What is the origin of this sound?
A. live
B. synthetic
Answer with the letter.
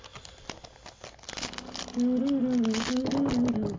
A